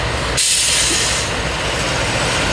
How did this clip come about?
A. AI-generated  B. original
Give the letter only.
B